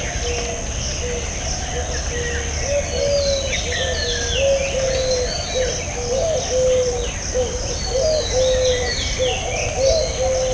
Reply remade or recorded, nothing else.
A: recorded